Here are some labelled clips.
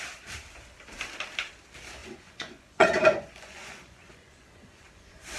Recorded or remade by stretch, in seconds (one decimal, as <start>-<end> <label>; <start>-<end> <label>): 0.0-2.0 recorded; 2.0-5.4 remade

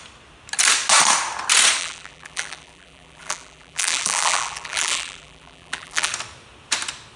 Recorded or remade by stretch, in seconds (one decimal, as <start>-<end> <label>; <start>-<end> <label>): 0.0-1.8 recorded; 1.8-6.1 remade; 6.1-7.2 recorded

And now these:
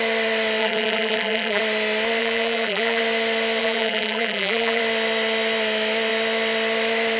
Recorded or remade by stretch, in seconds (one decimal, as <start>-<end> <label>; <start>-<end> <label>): 0.0-0.6 recorded; 0.6-1.6 remade; 1.6-2.2 recorded; 2.2-3.0 remade; 3.0-3.6 recorded; 3.6-4.8 remade; 4.8-7.2 recorded